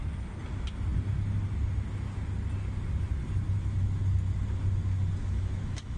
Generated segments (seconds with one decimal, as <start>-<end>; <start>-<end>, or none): 5.2-6.0